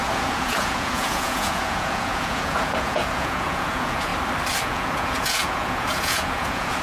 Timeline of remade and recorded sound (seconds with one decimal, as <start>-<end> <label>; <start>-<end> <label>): 0.0-4.1 remade; 4.1-4.6 recorded; 4.6-6.8 remade